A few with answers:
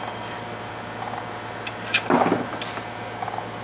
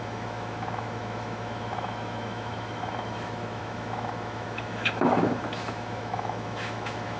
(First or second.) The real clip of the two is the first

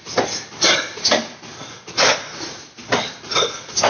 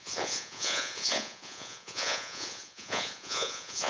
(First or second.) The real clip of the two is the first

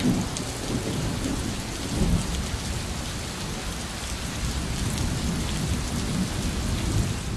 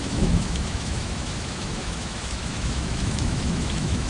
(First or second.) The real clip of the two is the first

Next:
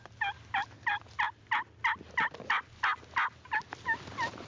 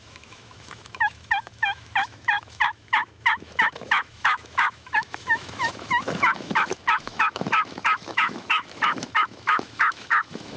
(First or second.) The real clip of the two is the first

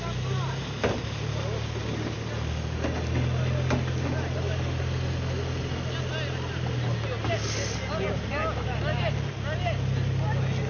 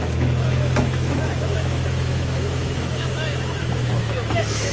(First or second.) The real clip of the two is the first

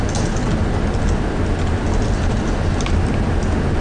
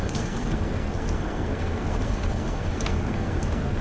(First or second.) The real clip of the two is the first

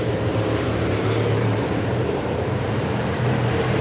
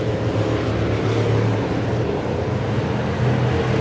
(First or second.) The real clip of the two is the second